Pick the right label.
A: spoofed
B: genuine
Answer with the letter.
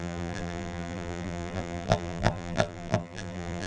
A